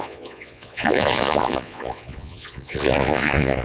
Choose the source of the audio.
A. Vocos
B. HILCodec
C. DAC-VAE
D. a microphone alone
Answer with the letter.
A